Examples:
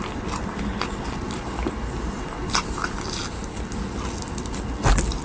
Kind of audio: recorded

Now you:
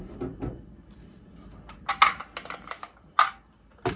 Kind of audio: recorded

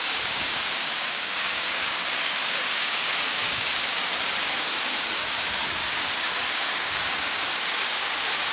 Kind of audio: remade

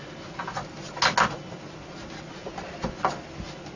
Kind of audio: recorded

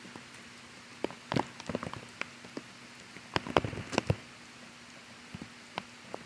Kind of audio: recorded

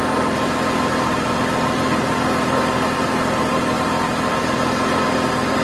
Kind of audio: recorded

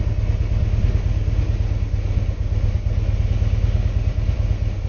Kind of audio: recorded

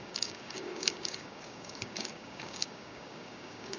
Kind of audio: remade